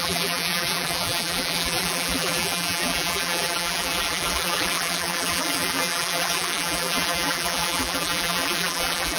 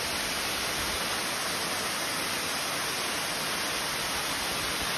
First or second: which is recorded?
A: second